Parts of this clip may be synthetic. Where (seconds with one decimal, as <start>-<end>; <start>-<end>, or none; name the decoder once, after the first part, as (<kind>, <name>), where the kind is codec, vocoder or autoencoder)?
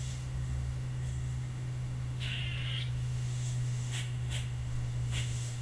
0.0-2.4 (autoencoder, DAC-VAE); 2.9-5.6